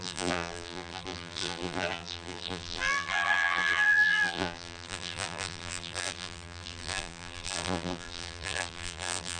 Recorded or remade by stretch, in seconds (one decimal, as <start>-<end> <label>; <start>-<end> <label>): 0.0-9.4 remade